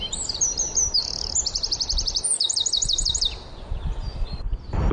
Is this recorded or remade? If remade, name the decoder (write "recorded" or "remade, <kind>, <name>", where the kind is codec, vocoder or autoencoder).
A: remade, vocoder, BigVGAN v2